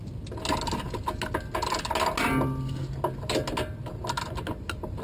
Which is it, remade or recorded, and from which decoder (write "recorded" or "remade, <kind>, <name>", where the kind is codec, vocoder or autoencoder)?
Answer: recorded